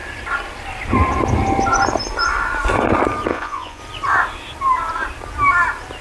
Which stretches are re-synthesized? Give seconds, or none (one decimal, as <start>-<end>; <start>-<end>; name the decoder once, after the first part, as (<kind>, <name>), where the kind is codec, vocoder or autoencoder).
3.3-3.8 (vocoder, Vocos)